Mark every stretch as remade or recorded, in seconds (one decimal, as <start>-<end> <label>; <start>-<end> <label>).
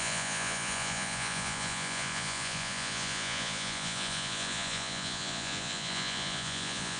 0.0-7.0 remade